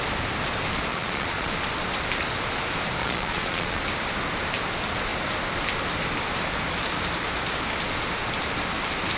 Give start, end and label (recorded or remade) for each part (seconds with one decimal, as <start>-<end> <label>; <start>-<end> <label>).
0.0-0.9 recorded; 0.9-1.5 remade; 1.5-3.0 recorded; 3.0-3.8 remade; 3.8-9.2 recorded

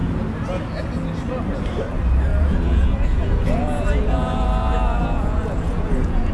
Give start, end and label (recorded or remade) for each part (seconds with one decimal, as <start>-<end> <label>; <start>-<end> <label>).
0.0-2.3 recorded; 2.3-6.3 remade

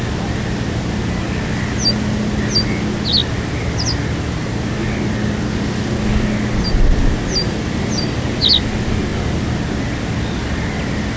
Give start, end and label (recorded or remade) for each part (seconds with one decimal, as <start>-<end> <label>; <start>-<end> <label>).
0.0-11.2 recorded

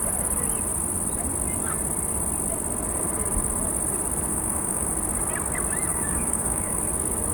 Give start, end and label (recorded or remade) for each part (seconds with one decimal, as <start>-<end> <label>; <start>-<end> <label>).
0.0-4.3 recorded; 4.3-4.9 remade; 4.9-5.9 recorded; 5.9-6.8 remade; 6.8-7.3 recorded

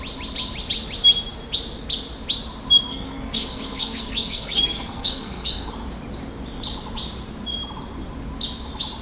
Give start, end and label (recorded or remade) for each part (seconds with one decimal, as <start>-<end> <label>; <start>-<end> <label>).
0.0-2.9 recorded; 2.9-5.7 remade; 5.7-9.0 recorded

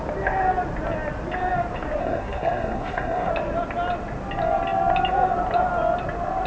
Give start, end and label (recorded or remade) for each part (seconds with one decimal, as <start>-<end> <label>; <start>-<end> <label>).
0.0-2.0 recorded; 2.0-3.3 remade; 3.3-6.5 recorded

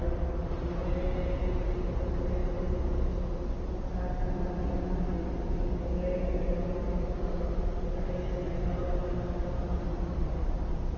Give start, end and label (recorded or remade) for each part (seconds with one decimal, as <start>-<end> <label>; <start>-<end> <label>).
0.0-11.0 recorded

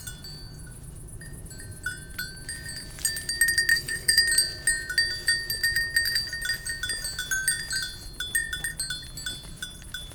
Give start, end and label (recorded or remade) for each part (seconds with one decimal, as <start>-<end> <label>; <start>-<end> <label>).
0.0-3.7 recorded; 3.7-4.2 remade; 4.2-10.1 recorded